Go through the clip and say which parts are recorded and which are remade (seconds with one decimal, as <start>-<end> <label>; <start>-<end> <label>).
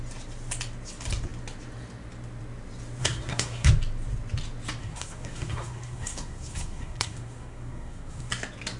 0.0-3.0 recorded; 3.0-3.7 remade; 3.7-4.8 recorded; 4.8-8.3 remade; 8.3-8.8 recorded